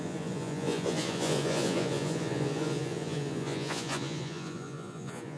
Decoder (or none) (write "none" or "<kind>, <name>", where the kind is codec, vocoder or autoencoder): vocoder, Vocos